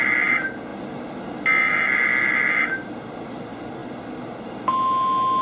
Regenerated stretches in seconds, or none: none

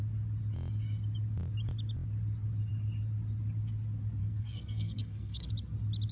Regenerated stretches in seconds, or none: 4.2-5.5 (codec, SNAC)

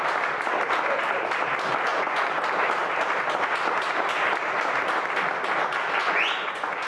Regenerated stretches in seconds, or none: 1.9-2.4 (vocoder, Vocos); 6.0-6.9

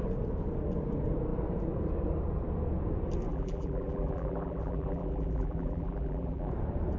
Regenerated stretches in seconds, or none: 3.3-6.5 (vocoder, BigVGAN v2)

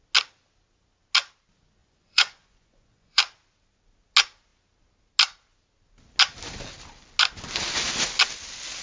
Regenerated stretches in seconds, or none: 1.8-3.2 (vocoder, Vocos)